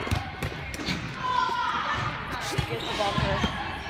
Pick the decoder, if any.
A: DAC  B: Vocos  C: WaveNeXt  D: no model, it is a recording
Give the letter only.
D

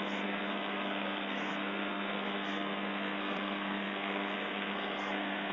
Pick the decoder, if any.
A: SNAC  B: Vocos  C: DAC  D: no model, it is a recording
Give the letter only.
A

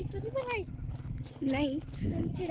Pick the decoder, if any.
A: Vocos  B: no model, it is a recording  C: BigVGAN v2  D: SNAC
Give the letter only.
B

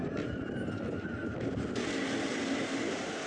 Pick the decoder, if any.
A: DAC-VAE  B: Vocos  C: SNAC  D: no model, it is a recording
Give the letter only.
D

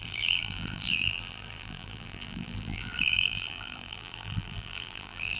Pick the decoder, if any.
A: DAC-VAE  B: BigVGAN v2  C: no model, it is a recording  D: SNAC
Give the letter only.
B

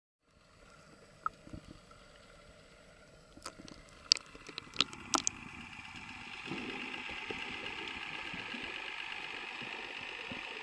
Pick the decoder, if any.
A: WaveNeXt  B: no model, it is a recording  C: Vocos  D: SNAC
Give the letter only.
B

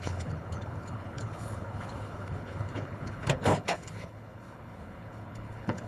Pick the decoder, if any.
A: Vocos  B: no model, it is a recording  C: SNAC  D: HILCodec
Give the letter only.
D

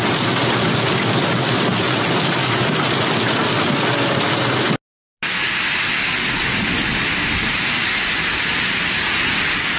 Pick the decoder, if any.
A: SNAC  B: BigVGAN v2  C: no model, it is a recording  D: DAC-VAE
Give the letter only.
C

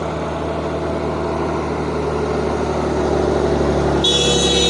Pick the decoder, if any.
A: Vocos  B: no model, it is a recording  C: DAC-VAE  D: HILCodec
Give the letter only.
B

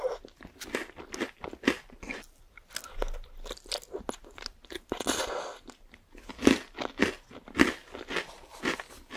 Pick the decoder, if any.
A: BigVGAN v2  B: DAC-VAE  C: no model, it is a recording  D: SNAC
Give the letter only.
C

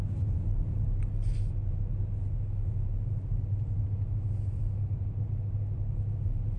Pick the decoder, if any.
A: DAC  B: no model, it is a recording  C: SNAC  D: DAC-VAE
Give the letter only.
B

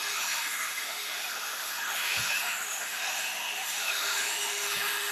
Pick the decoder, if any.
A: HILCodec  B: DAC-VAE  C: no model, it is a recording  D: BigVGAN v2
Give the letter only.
B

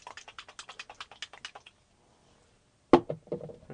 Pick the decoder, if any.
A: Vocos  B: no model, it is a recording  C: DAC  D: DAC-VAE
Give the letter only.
B